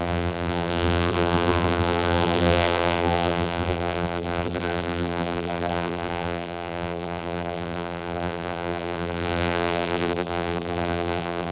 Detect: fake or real fake